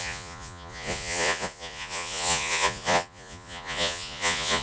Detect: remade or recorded remade